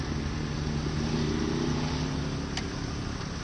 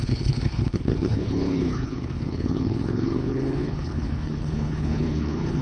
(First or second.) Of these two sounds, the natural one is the first